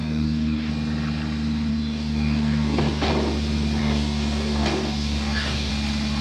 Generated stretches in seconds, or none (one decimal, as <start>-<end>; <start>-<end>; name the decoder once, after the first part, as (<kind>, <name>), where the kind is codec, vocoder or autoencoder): 0.0-0.7 (codec, DAC); 1.7-3.1; 3.8-5.7